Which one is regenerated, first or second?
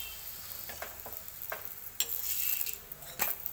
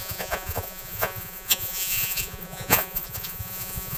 second